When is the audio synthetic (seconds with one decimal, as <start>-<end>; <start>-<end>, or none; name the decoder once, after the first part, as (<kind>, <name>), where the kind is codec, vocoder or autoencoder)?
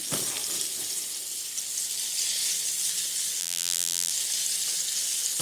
3.4-4.1 (vocoder, BigVGAN v2)